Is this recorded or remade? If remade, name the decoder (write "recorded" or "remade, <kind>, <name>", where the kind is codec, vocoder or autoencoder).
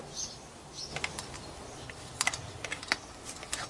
recorded